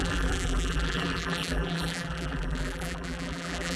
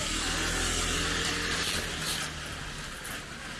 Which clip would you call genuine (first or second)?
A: second